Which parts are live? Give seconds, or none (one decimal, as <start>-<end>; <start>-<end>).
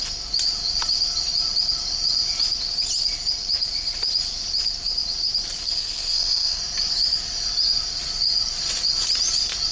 0.0-5.6; 6.6-9.7